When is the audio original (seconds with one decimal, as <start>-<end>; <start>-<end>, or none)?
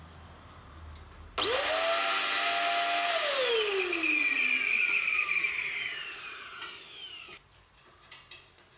0.0-5.1; 6.5-7.1